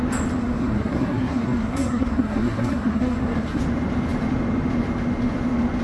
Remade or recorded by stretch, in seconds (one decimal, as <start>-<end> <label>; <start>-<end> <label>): 0.0-0.4 recorded; 0.4-3.6 remade; 3.6-5.8 recorded